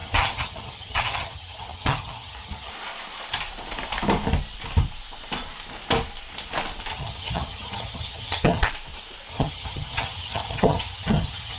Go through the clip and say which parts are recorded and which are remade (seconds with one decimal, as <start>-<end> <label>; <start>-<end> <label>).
0.0-2.7 remade; 2.7-6.9 recorded; 6.9-8.7 remade; 8.7-9.3 recorded; 9.3-11.6 remade